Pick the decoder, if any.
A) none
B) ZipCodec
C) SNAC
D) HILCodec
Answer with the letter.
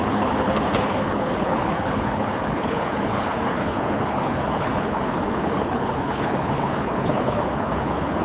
D